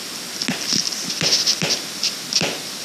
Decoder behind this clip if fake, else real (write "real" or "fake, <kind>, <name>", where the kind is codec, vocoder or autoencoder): real